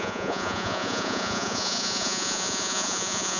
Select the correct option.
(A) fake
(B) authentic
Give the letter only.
A